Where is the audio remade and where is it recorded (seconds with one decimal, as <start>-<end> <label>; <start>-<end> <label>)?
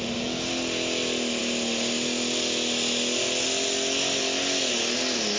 0.0-5.4 recorded